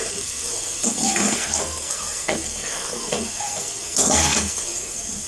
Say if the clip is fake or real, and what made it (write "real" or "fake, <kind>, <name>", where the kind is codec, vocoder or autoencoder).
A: fake, codec, SNAC